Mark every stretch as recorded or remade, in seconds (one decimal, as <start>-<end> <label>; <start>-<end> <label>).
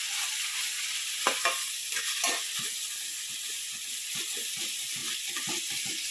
0.0-6.1 recorded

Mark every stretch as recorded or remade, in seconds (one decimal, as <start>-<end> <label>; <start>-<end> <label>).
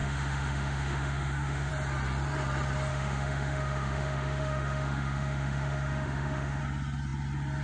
0.0-1.7 remade; 1.7-2.9 recorded; 2.9-6.6 remade; 6.6-7.6 recorded